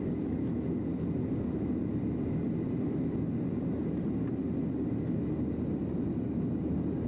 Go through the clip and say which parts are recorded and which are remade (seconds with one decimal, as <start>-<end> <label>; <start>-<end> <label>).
0.0-7.1 recorded